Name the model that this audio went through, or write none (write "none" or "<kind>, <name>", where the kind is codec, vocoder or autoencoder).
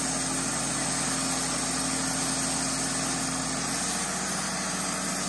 none